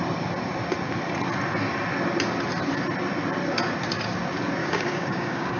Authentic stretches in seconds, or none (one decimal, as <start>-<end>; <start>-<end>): 0.0-4.6